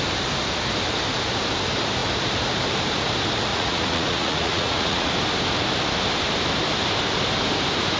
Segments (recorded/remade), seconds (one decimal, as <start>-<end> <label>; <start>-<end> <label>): 0.0-3.5 recorded; 3.5-5.1 remade; 5.1-8.0 recorded